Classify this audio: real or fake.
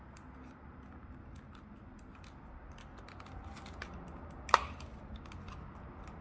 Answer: real